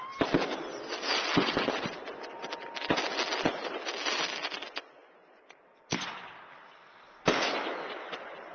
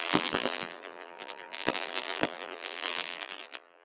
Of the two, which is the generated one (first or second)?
second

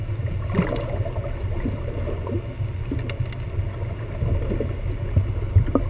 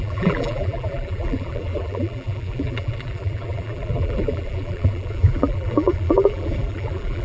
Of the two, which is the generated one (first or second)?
second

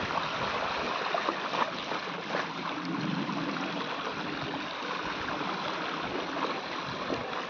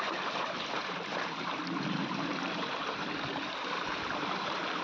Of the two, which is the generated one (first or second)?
second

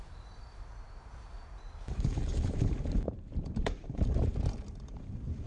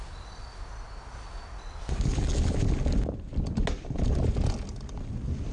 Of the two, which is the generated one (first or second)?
first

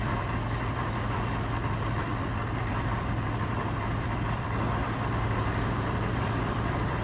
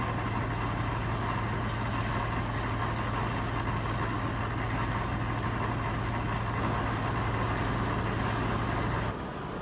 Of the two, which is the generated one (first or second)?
first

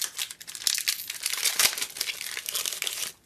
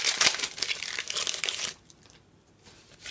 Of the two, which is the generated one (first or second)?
second